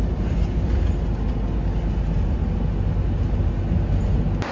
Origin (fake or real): real